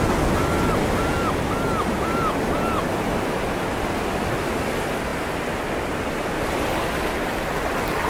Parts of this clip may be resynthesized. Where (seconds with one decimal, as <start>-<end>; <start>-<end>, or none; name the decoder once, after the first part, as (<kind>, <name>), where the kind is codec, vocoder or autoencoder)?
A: none